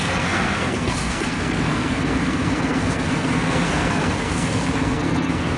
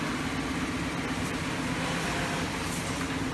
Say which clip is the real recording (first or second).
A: second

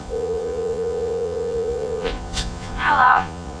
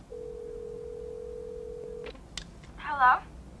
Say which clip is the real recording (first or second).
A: second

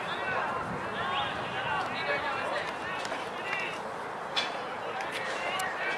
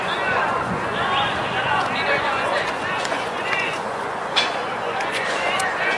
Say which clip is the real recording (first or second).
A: first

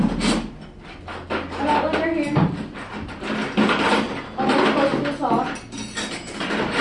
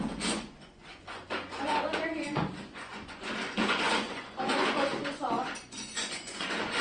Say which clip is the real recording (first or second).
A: first